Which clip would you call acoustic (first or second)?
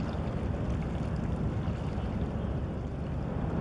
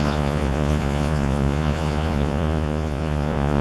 first